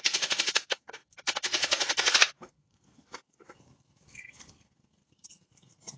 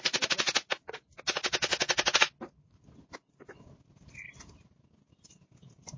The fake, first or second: first